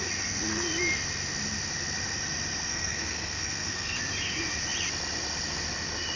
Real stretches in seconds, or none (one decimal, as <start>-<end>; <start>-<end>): 0.0-2.7; 4.0-6.2